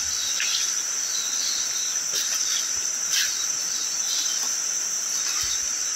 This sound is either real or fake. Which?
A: fake